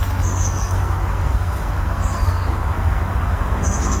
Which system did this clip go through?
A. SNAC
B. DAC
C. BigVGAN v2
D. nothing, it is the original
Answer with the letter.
A